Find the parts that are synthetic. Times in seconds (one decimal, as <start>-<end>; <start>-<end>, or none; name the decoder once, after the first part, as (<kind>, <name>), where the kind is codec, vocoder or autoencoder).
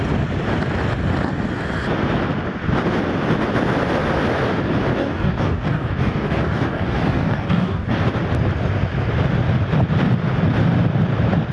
5.0-8.0 (codec, DAC)